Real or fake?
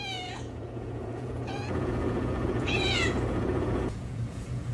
fake